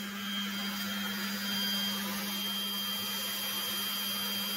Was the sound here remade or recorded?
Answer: recorded